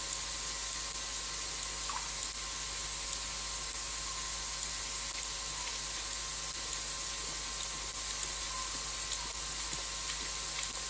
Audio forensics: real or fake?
real